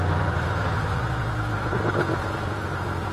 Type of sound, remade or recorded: recorded